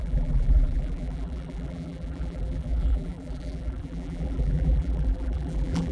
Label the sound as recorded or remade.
remade